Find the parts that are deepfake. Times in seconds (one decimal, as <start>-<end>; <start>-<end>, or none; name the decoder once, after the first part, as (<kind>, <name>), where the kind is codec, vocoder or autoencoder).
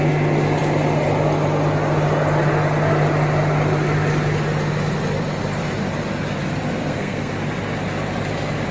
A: 6.8-7.3 (codec, SNAC)